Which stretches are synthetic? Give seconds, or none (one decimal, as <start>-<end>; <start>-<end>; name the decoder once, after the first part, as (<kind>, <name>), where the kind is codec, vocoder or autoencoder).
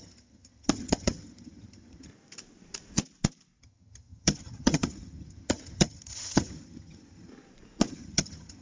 0.0-2.1 (vocoder, HiFi-GAN); 3.6-7.3; 7.9-8.6